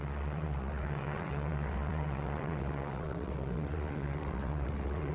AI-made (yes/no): yes